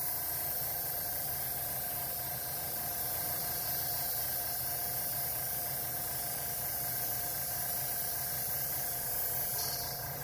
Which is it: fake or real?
real